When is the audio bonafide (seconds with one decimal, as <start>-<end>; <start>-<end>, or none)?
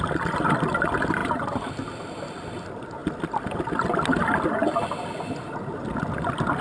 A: 0.0-1.2; 1.7-6.6